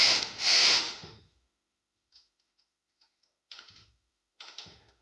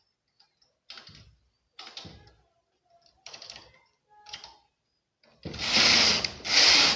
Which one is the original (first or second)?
second